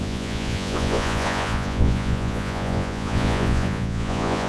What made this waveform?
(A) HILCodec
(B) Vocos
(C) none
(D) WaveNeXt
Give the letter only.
B